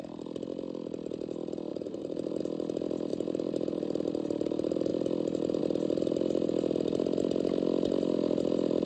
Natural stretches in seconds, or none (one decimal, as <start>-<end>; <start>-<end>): 0.0-1.7; 2.4-3.1; 4.1-8.9